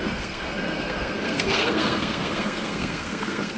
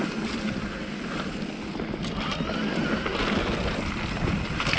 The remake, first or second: first